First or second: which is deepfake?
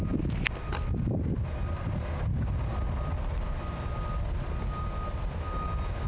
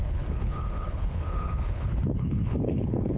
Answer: second